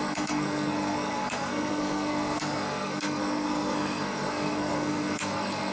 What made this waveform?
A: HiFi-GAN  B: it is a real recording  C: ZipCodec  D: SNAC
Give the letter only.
D